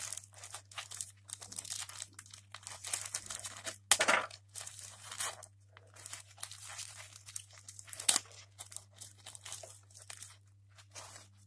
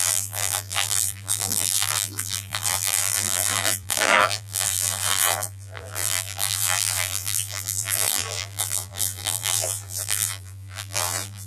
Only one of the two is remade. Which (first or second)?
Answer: second